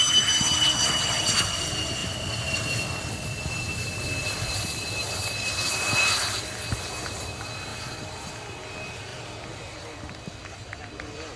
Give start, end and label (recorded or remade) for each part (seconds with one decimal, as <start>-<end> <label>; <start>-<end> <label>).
0.0-2.0 recorded; 2.0-6.4 remade; 6.4-7.7 recorded; 7.7-8.4 remade; 8.4-9.1 recorded; 9.1-9.8 remade; 9.8-11.4 recorded